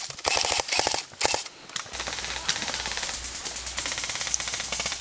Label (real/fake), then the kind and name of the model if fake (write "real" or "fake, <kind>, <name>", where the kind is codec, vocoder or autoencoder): real